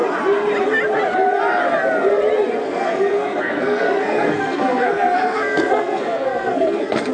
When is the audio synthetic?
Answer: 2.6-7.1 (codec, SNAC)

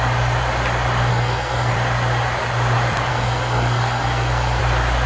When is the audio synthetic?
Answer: 1.1-1.7 (codec, SNAC); 3.1-4.6

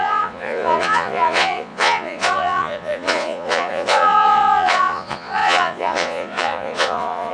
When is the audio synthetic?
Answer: 0.0-7.3 (vocoder, Vocos)